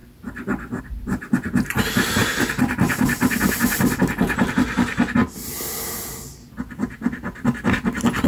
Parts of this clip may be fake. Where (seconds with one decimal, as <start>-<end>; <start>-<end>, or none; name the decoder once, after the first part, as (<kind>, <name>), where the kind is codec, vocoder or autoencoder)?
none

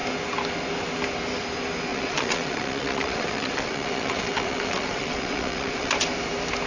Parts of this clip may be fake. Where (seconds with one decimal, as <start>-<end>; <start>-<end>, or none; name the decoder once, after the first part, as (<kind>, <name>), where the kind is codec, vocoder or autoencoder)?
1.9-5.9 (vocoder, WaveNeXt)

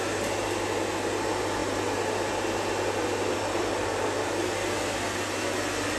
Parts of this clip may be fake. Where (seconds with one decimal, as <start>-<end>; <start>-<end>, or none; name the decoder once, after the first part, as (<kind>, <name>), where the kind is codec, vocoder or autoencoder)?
none

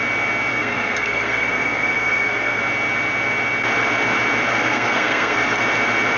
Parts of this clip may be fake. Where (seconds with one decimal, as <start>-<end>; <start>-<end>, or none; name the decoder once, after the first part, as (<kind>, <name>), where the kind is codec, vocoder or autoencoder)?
0.5-2.6 (codec, SNAC); 4.5-5.6

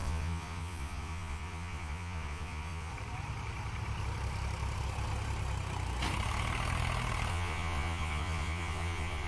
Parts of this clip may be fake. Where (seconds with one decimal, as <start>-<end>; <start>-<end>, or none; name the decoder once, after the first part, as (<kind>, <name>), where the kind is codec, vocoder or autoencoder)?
0.0-2.9 (vocoder, Vocos); 7.3-9.3

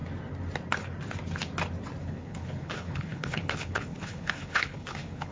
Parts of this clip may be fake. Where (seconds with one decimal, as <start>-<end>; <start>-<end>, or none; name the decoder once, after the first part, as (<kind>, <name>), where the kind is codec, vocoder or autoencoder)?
2.0-5.3 (codec, HILCodec)

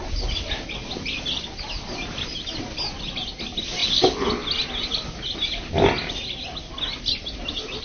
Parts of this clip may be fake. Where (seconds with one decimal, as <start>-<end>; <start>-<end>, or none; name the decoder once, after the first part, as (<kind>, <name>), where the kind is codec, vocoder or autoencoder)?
none